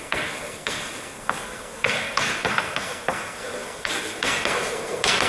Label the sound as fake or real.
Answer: fake